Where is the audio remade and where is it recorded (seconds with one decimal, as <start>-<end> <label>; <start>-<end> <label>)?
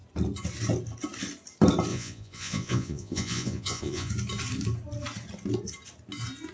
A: 0.0-1.9 recorded; 1.9-4.1 remade; 4.1-6.5 recorded